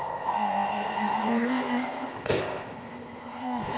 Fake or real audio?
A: fake